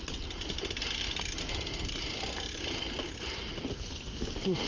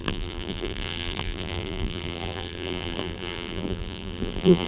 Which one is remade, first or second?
second